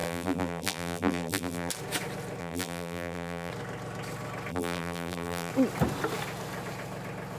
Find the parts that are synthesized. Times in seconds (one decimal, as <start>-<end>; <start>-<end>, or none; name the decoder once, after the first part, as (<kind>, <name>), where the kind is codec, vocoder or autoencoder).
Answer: 0.0-1.7 (vocoder, BigVGAN v2); 2.4-3.5; 4.5-5.5